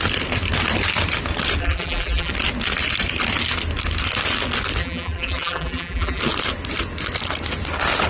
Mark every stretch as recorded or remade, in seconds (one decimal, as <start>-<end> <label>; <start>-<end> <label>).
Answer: 0.0-1.6 recorded; 1.6-2.3 remade; 2.3-4.8 recorded; 4.8-6.2 remade; 6.2-8.1 recorded